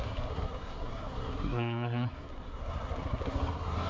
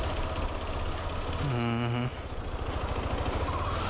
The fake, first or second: first